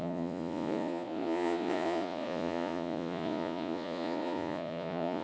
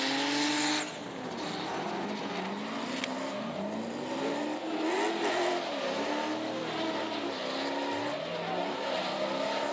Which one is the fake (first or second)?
first